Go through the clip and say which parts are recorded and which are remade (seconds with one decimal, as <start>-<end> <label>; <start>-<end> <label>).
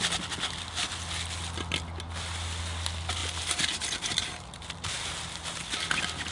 0.0-6.3 recorded